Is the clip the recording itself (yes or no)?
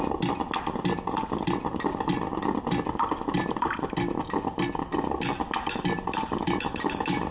yes